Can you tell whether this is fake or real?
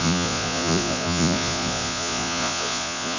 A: fake